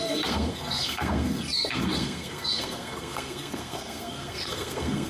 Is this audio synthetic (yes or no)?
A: yes